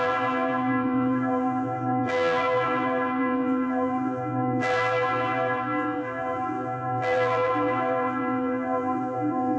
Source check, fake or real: fake